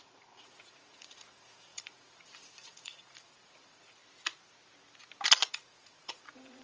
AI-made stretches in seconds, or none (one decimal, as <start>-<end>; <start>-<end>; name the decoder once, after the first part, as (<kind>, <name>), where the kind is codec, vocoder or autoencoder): 0.0-4.0 (vocoder, Vocos); 5.5-6.6